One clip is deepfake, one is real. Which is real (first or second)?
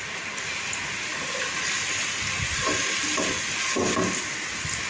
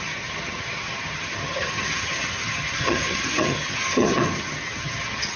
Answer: first